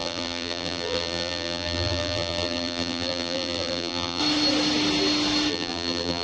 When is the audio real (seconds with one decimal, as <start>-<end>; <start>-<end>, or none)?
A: 4.2-5.5